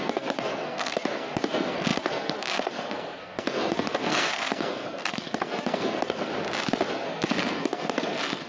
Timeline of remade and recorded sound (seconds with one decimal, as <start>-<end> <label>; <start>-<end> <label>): 0.0-6.3 remade; 6.3-6.9 recorded; 6.9-8.5 remade